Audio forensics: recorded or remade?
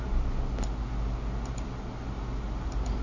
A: recorded